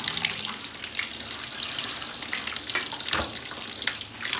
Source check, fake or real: real